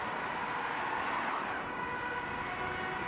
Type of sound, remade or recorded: recorded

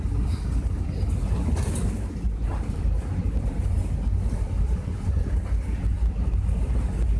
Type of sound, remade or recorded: recorded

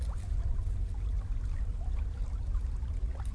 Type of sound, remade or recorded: recorded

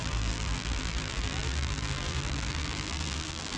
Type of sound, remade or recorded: remade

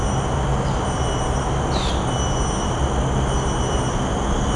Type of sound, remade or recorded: recorded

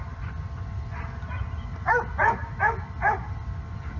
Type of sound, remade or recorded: recorded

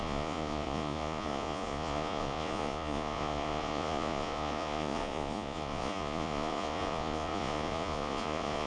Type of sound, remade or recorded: remade